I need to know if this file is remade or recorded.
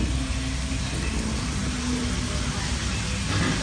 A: recorded